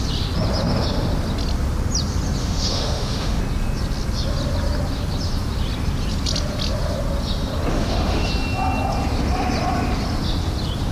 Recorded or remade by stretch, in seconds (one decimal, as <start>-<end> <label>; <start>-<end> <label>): 0.0-2.4 recorded; 2.4-3.4 remade; 3.4-7.7 recorded; 7.7-8.3 remade; 8.3-10.9 recorded